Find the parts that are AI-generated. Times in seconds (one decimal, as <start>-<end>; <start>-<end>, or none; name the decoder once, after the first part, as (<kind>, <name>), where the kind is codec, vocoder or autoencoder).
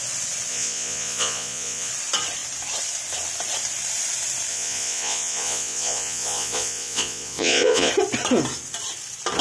0.5-1.9 (vocoder, Vocos); 4.5-7.9